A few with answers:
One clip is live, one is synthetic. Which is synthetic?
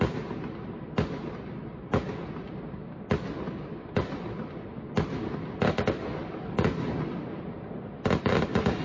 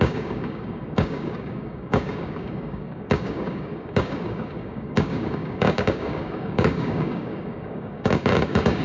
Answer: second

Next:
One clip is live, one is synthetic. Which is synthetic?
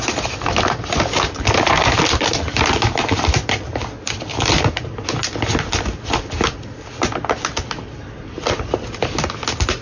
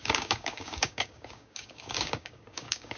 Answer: second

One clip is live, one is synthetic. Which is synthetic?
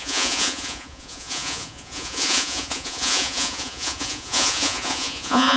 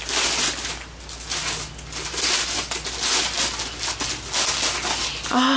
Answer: first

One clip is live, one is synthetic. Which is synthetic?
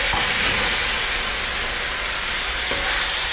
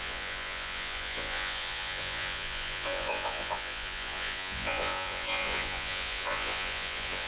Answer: second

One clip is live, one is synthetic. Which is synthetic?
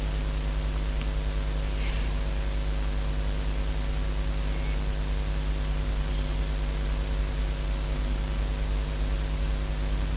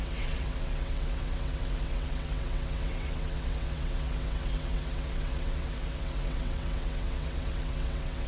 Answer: second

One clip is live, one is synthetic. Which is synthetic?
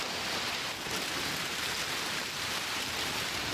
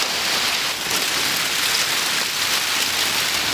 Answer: first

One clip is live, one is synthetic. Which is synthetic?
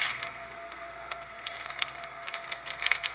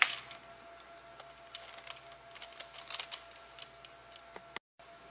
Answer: first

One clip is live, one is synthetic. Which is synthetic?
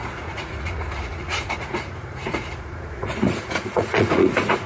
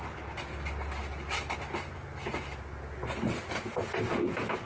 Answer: first